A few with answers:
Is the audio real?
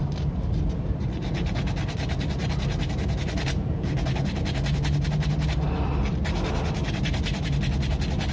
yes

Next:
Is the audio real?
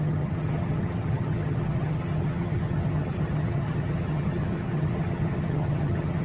no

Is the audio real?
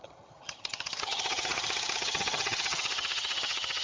no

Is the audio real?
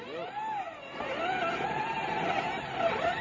yes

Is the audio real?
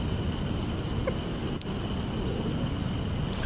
yes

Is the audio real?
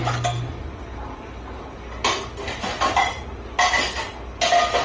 yes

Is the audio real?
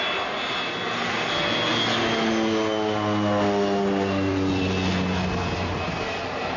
yes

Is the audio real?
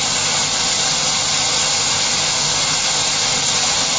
yes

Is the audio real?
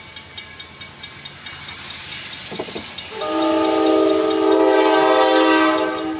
yes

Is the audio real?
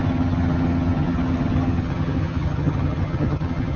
no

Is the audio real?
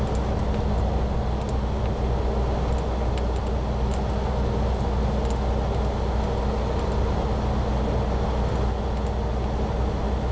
yes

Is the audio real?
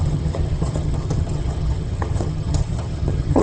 no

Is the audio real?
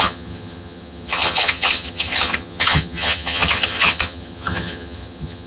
no